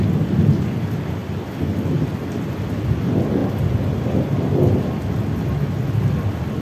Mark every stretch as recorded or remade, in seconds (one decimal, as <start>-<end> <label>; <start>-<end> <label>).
0.0-6.6 recorded